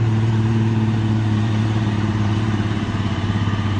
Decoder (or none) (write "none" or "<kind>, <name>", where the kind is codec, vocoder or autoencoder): vocoder, BigVGAN v2